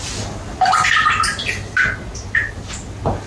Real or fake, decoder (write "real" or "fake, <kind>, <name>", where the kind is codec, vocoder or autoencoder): real